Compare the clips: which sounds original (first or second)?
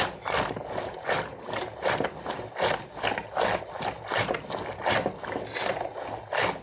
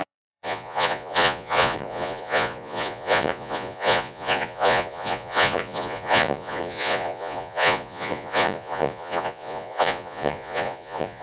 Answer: first